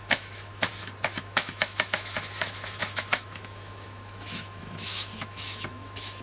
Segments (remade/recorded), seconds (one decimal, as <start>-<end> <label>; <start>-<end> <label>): 0.0-0.7 remade; 0.7-1.2 recorded; 1.2-6.2 remade